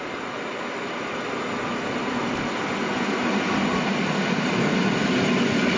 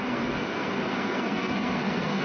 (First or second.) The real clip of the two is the first